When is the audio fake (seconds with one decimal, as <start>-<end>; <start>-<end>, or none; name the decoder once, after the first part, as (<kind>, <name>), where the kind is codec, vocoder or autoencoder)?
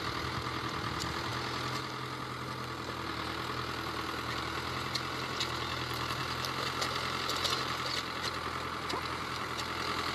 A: none